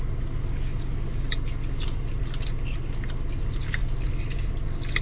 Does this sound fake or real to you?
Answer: real